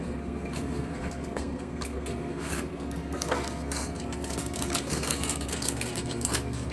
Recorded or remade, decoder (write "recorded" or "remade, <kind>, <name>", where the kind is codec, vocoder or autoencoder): remade, codec, SNAC